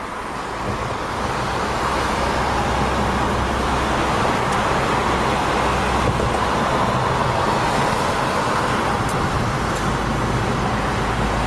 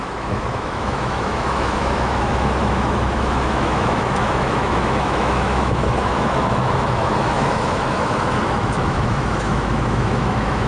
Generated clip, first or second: second